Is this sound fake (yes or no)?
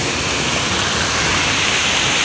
no